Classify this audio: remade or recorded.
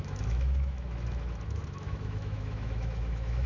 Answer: remade